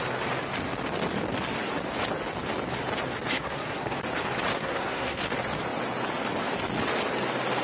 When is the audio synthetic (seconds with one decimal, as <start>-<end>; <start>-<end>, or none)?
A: 3.3-4.0; 4.5-5.2